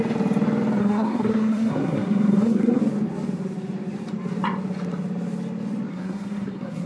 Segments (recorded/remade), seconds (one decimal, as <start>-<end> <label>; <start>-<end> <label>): 0.0-0.8 recorded; 0.8-2.8 remade; 2.8-5.9 recorded; 5.9-6.9 remade